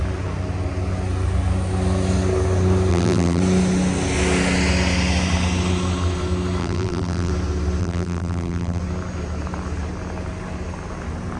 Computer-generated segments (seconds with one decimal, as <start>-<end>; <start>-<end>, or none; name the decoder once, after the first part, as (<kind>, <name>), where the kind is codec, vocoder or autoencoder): 2.9-3.4 (vocoder, BigVGAN v2); 6.6-7.3; 7.8-8.8